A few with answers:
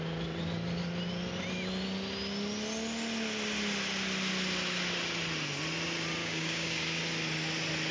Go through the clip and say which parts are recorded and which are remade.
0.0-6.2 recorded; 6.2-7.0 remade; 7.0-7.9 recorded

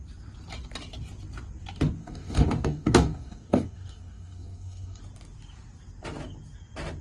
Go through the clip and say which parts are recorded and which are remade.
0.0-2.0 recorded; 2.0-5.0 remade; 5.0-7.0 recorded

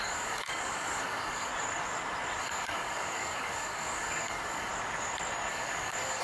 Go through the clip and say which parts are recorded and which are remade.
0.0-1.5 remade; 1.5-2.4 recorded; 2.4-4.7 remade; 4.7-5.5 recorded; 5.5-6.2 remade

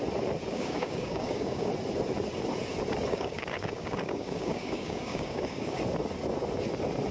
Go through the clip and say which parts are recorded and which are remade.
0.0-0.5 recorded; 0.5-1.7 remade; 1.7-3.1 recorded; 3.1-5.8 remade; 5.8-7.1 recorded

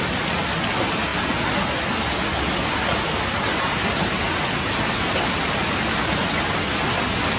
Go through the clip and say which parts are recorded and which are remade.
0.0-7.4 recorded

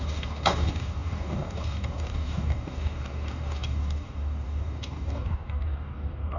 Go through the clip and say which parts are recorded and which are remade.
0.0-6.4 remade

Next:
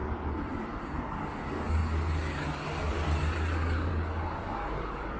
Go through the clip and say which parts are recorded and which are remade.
0.0-1.0 recorded; 1.0-5.2 remade

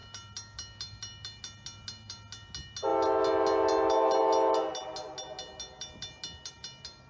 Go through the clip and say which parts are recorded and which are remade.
0.0-7.1 recorded